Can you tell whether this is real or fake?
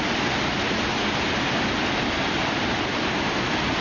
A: real